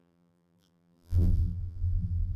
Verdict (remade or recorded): remade